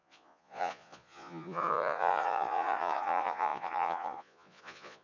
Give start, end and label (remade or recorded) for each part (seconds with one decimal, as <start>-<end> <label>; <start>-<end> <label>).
0.0-5.0 remade